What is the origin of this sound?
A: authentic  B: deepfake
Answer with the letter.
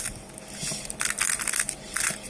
A